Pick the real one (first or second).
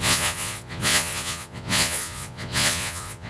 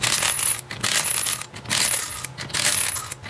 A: second